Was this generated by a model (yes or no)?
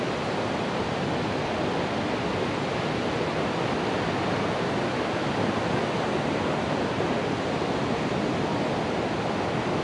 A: no